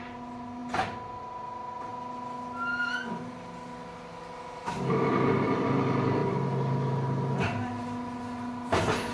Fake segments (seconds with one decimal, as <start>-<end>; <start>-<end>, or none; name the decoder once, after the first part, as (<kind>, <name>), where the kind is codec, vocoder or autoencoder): none